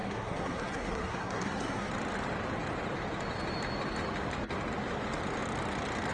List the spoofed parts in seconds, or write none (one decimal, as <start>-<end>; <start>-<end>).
0.0-1.9